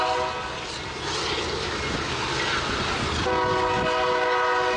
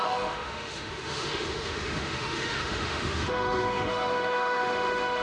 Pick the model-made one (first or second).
second